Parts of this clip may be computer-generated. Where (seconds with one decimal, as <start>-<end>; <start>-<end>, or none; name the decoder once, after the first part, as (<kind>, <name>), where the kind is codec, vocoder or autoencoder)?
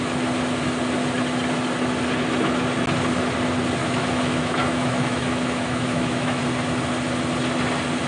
3.8-6.4 (autoencoder, DAC-VAE)